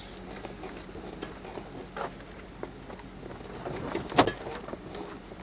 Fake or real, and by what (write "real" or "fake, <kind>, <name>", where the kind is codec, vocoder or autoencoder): real